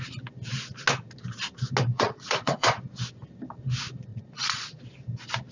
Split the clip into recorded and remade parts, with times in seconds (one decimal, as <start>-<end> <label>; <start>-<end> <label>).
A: 0.0-1.9 recorded; 1.9-2.7 remade; 2.7-4.1 recorded; 4.1-4.8 remade; 4.8-5.5 recorded